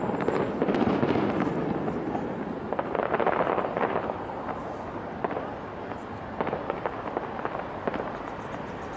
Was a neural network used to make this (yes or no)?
no